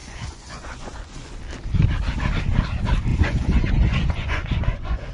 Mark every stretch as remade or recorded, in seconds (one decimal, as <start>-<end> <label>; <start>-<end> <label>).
0.0-1.4 remade; 1.4-3.1 recorded; 3.1-5.1 remade